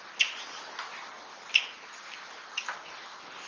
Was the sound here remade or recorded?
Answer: recorded